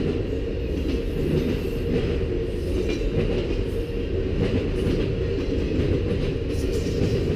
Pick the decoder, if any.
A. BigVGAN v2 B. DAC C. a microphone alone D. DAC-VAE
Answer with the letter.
C